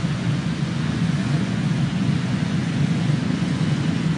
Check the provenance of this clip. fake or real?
fake